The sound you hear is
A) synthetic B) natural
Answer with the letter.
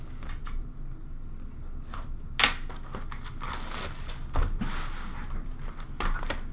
B